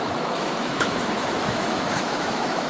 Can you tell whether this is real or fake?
fake